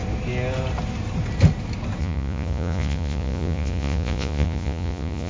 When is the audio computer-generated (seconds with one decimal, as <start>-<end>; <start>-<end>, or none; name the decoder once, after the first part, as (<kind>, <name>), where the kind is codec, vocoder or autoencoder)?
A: 2.0-5.3 (vocoder, Vocos)